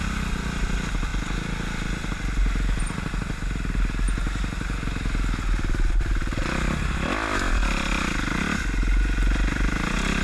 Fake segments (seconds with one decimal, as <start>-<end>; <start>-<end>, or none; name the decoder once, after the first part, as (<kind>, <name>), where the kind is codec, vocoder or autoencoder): none